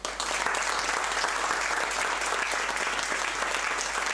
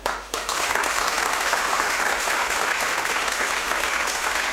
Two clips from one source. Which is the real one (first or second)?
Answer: first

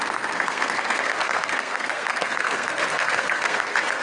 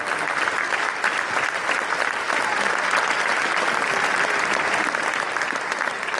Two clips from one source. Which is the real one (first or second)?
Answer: second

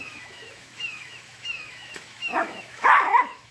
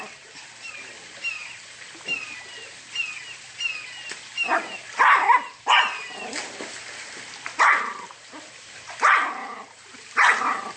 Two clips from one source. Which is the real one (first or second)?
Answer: second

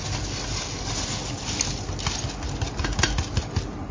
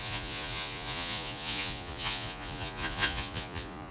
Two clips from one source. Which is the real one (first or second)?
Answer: first